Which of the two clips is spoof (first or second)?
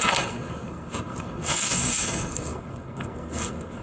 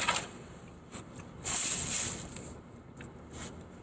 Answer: first